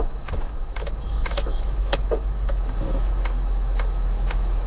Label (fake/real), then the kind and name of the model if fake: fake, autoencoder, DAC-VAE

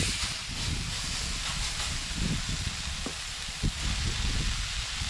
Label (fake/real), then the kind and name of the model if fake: real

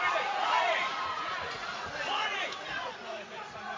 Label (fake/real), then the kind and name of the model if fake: fake, vocoder, Vocos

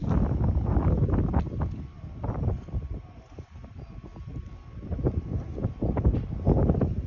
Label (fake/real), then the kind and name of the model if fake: real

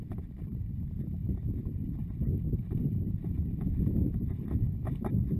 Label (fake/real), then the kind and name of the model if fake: fake, vocoder, BigVGAN v2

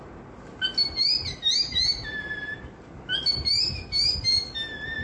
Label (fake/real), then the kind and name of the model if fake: real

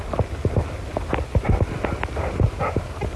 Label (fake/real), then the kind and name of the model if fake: real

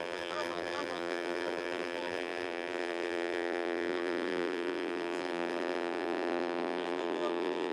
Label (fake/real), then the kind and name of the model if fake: fake, vocoder, BigVGAN v2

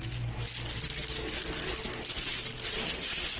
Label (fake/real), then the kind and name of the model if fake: real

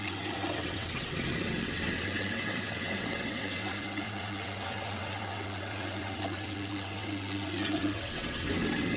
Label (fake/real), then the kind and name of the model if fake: fake, vocoder, WaveNeXt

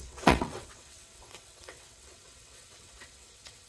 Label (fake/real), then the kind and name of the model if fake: fake, vocoder, WaveNeXt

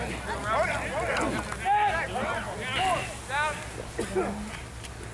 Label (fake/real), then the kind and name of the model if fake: real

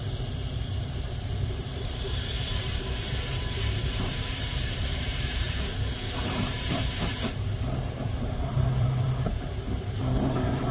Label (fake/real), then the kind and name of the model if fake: fake, vocoder, BigVGAN v2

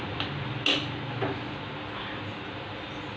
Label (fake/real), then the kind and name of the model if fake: real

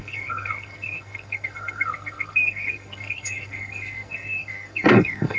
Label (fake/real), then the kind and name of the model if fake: fake, codec, SNAC